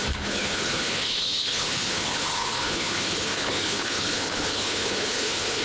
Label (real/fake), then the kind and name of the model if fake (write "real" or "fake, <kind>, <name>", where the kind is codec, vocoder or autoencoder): fake, codec, HILCodec